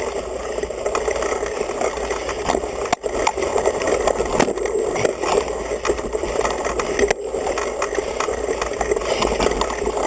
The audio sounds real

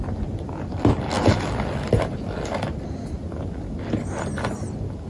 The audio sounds real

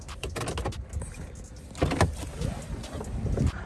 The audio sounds real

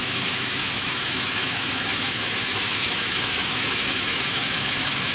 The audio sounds fake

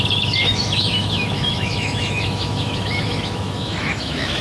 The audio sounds fake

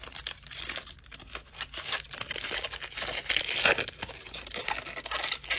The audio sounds real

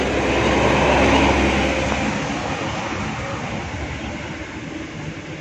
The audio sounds real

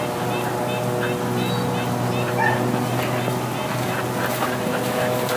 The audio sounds real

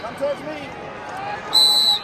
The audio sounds real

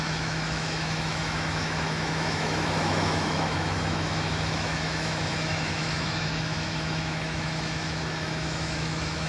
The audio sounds fake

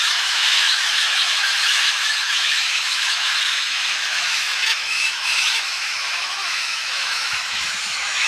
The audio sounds fake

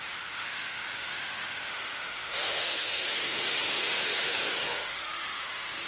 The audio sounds fake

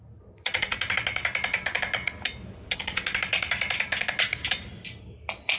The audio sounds real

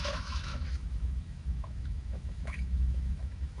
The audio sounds fake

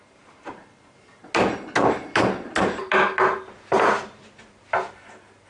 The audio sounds real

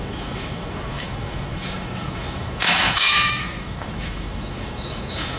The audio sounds fake